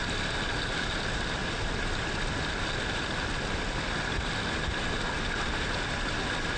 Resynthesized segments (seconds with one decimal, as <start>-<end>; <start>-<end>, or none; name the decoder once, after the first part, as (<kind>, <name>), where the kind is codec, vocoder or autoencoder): none